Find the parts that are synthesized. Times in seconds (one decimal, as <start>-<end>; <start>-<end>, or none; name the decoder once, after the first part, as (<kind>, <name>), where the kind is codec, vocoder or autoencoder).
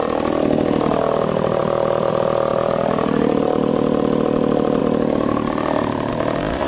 4.8-6.1 (vocoder, BigVGAN v2)